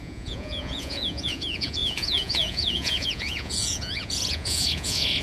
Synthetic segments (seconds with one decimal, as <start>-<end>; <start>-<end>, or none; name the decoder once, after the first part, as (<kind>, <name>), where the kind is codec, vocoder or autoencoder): 0.0-5.2 (vocoder, Vocos)